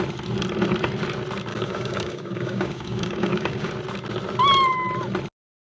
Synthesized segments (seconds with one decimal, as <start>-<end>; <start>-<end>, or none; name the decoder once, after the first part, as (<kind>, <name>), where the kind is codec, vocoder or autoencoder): 1.5-3.7 (codec, DAC)